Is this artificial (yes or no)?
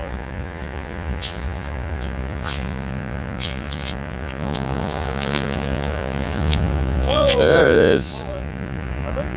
yes